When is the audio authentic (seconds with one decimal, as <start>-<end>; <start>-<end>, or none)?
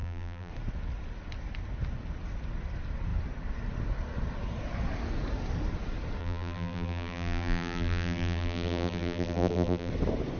0.5-6.2; 9.9-10.4